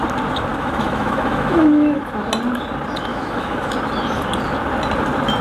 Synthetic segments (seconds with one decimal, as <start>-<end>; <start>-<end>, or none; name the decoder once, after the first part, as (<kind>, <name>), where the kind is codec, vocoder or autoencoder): 0.5-2.0 (autoencoder, DAC-VAE); 3.1-3.7